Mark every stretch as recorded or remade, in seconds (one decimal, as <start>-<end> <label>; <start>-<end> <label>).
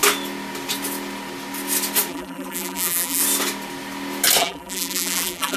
0.0-2.1 recorded; 2.1-3.2 remade; 3.2-4.4 recorded; 4.4-5.6 remade